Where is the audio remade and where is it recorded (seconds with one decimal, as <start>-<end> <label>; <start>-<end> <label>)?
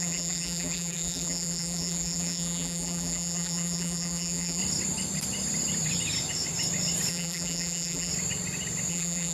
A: 0.0-4.6 remade; 4.6-7.1 recorded; 7.1-8.1 remade; 8.1-8.9 recorded; 8.9-9.3 remade